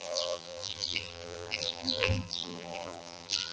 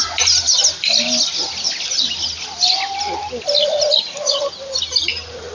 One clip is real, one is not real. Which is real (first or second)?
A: second